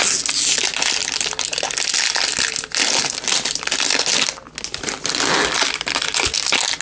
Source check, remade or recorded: recorded